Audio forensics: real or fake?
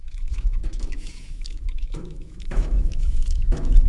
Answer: fake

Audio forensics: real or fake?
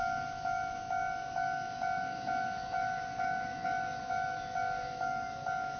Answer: fake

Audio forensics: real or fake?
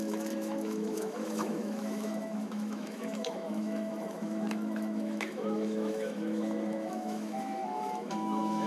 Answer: fake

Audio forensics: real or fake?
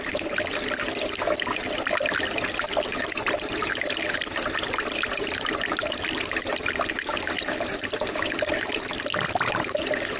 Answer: real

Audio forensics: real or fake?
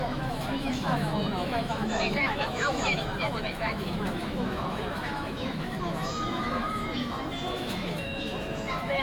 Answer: fake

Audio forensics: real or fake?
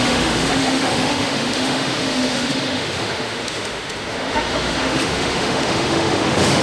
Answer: fake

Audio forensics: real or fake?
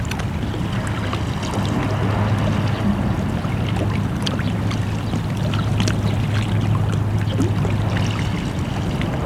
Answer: real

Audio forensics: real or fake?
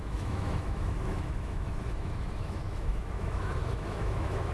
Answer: fake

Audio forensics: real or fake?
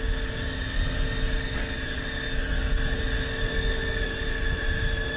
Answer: real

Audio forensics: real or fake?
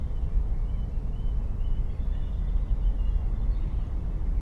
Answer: real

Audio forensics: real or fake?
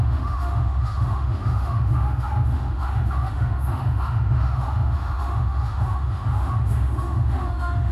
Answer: fake